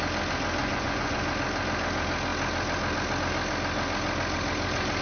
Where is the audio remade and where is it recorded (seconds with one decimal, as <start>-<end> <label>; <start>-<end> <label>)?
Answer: 0.0-0.6 recorded; 0.6-1.2 remade; 1.2-5.0 recorded